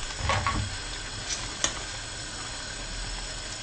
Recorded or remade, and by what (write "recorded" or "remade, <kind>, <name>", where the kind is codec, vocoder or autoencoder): recorded